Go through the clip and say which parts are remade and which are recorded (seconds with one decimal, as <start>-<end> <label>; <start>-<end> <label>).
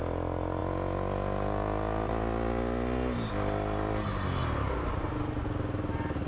0.0-6.3 recorded